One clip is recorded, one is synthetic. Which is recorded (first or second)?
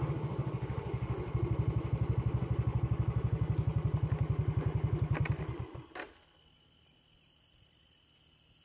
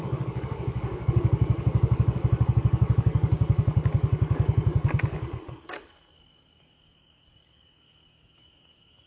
first